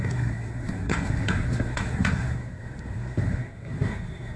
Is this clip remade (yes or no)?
yes